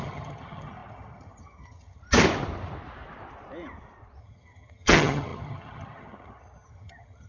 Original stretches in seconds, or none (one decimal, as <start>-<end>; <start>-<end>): 2.0-4.2